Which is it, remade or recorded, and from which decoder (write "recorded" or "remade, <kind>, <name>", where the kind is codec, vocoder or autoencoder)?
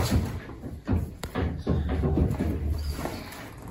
remade, vocoder, BigVGAN v2